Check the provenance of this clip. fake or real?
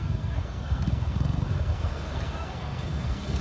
fake